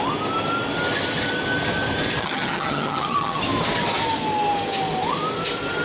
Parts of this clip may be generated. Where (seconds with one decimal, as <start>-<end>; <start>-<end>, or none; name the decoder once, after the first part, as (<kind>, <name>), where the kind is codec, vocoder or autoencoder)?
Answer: 2.2-3.4 (vocoder, HiFi-GAN)